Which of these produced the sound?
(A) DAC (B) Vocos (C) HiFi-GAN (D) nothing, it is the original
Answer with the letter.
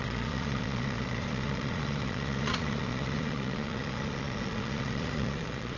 B